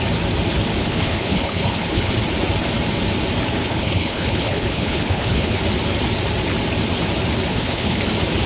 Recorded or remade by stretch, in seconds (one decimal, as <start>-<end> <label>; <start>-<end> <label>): 0.0-0.8 recorded; 0.8-2.1 remade; 2.1-3.6 recorded; 3.6-5.6 remade; 5.6-7.5 recorded; 7.5-8.0 remade; 8.0-8.5 recorded